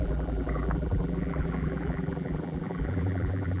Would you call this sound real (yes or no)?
no